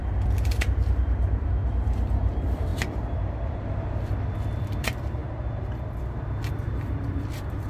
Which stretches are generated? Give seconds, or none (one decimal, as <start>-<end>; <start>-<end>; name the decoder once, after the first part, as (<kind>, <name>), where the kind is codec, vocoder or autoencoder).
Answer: 0.0-5.2 (vocoder, BigVGAN v2); 6.5-7.7

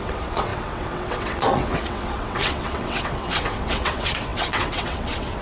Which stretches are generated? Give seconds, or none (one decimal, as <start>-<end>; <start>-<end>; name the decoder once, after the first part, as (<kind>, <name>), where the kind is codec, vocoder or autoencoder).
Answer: 0.0-5.4 (vocoder, WaveNeXt)